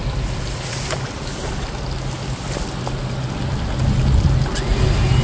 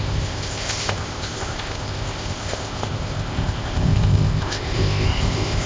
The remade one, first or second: second